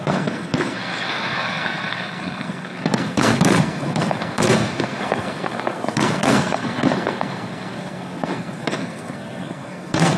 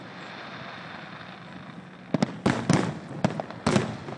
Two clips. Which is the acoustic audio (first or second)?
second